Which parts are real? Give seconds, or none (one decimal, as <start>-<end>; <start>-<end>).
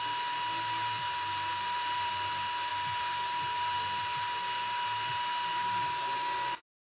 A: 0.0-1.5; 2.1-6.8